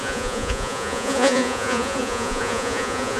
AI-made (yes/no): yes